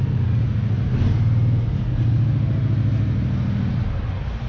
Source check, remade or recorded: recorded